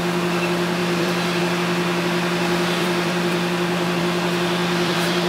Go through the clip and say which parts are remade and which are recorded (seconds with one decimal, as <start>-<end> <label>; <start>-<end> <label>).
0.0-0.8 recorded; 0.8-1.4 remade; 1.4-2.8 recorded; 2.8-4.0 remade; 4.0-4.6 recorded; 4.6-5.3 remade